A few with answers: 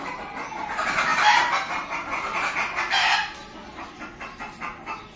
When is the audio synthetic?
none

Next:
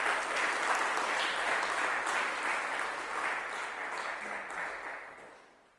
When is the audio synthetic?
none